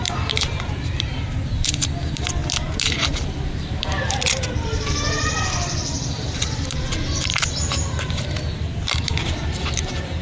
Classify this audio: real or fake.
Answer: fake